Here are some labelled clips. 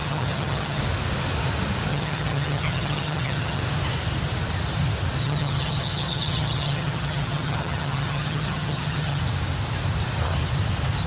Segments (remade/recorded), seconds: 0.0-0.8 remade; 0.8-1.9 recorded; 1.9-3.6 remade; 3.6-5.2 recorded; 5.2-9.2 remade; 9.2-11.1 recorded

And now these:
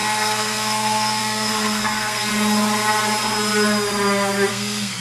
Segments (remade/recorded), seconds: 0.0-2.3 remade; 2.3-4.5 recorded; 4.5-5.0 remade

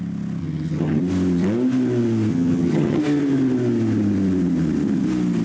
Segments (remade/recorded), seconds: 0.0-0.4 recorded; 0.4-1.0 remade; 1.0-2.3 recorded; 2.3-3.0 remade; 3.0-5.4 recorded

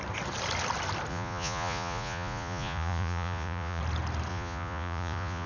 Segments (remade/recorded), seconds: 0.0-1.1 recorded; 1.1-3.8 remade; 3.8-4.3 recorded; 4.3-5.5 remade

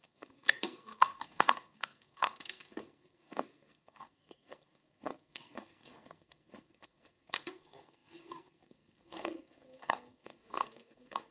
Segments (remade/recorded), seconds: 0.0-11.3 remade

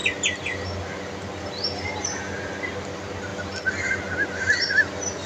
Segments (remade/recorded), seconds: 0.0-5.3 recorded

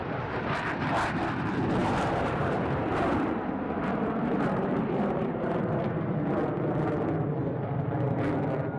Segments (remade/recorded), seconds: 0.0-1.8 recorded; 1.8-6.1 remade; 6.1-8.8 recorded

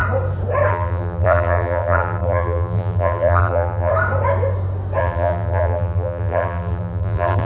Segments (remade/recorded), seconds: 0.0-0.7 recorded; 0.7-3.9 remade; 3.9-5.0 recorded; 5.0-7.5 remade